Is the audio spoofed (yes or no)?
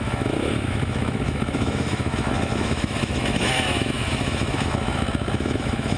yes